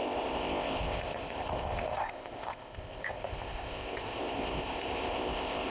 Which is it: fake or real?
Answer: fake